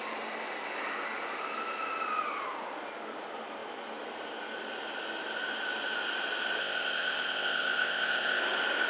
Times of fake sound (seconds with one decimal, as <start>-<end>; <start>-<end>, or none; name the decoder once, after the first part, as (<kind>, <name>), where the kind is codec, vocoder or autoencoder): 6.6-8.4 (codec, ZipCodec)